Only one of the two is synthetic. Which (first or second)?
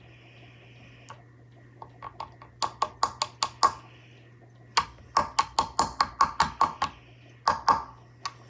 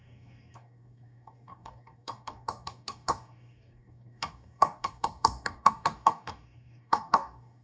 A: second